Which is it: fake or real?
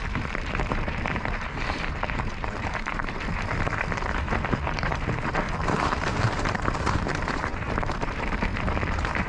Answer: fake